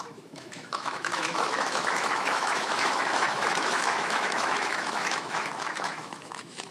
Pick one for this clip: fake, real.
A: fake